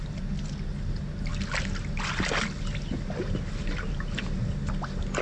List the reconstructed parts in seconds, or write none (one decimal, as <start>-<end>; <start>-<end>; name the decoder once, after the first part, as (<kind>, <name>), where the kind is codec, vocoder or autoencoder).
none